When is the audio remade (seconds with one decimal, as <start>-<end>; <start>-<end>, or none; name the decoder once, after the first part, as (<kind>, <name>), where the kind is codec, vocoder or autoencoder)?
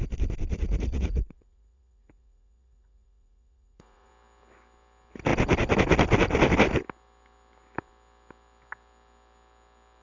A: 0.5-4.1 (vocoder, Vocos)